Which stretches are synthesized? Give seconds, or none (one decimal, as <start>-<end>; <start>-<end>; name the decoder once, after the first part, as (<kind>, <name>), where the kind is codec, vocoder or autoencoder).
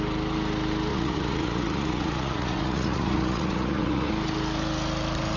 0.9-4.1 (vocoder, Vocos)